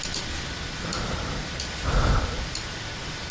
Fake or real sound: real